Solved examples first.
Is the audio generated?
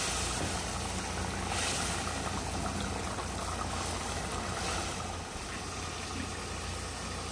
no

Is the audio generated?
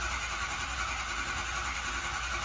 no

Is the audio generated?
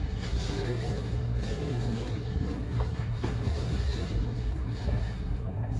yes